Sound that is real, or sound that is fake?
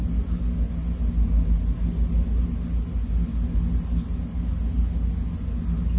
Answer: real